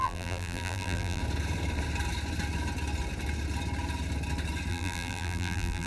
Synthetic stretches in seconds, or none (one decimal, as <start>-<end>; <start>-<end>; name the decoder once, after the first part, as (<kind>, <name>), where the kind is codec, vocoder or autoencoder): 0.0-1.2 (vocoder, BigVGAN v2); 4.7-5.9